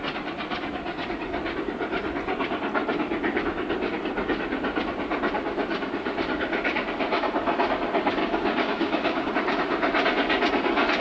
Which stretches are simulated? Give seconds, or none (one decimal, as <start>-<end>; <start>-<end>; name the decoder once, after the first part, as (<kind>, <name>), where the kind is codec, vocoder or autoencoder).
8.2-9.3 (codec, DAC)